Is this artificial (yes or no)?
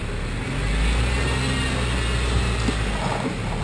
no